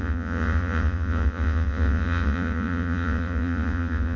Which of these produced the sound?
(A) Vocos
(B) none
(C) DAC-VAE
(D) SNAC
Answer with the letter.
A